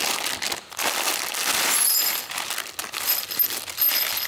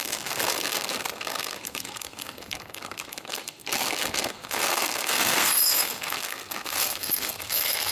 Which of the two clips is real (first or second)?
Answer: first